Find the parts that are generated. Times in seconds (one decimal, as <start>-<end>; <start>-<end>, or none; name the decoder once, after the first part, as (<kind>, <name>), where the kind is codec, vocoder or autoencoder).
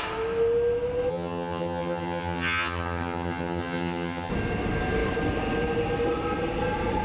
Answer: 1.1-4.3 (vocoder, HiFi-GAN)